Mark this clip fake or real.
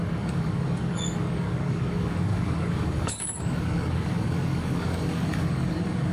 fake